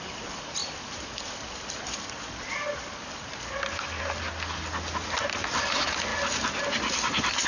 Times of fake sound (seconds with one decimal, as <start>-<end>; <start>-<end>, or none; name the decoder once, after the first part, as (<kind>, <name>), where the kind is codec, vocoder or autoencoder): none